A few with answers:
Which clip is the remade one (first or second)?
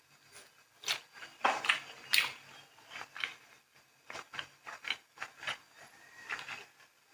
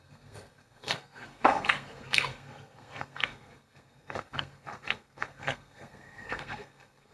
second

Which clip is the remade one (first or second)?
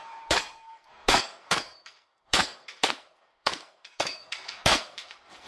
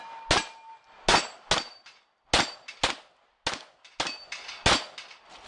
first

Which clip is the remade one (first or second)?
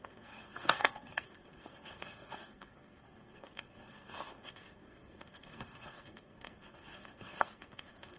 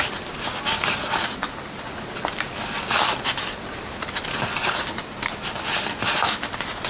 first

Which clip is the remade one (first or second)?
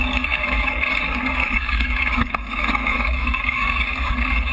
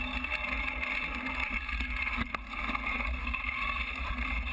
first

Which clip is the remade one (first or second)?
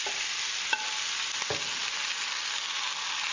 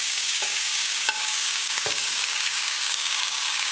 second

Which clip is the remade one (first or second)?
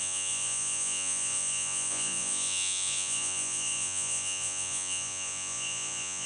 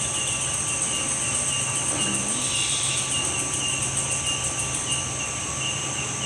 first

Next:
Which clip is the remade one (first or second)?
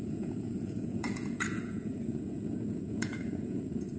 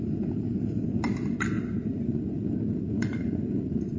first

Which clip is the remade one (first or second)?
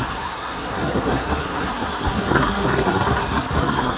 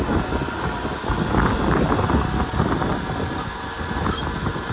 first